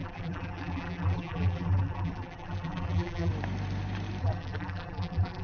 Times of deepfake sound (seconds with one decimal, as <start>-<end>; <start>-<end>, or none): 0.0-3.3; 4.2-5.4